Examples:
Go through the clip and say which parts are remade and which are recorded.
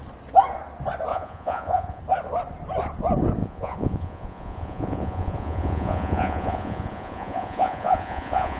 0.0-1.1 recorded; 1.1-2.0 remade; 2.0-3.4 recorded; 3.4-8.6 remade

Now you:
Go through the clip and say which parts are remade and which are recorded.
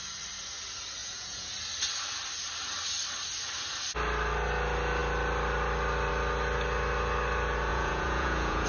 0.0-1.0 recorded; 1.0-1.5 remade; 1.5-7.7 recorded; 7.7-8.7 remade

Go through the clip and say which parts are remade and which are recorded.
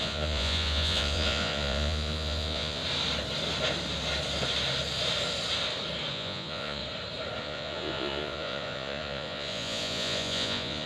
0.0-2.8 remade; 2.8-6.1 recorded; 6.1-6.8 remade; 6.8-7.4 recorded; 7.4-10.9 remade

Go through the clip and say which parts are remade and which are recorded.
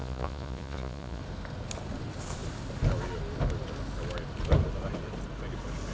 0.0-1.2 remade; 1.2-5.9 recorded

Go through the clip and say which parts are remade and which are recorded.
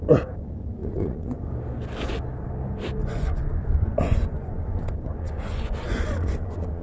0.0-0.8 recorded; 0.8-1.5 remade; 1.5-3.0 recorded; 3.0-6.8 remade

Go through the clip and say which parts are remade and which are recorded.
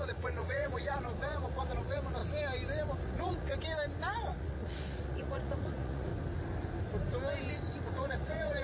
0.0-2.2 remade; 2.2-3.0 recorded; 3.0-3.5 remade; 3.5-4.2 recorded; 4.2-6.1 remade; 6.1-7.9 recorded; 7.9-8.6 remade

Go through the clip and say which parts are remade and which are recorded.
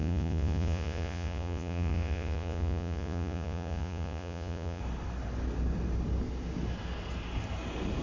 0.0-4.8 remade; 4.8-8.0 recorded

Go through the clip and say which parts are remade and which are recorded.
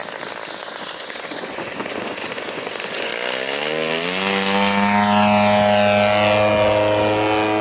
0.0-0.6 recorded; 0.6-3.1 remade; 3.1-7.6 recorded